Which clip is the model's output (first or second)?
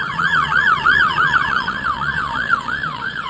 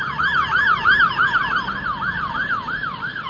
first